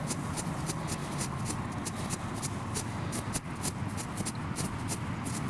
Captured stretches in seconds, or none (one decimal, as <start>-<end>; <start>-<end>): 0.0-5.5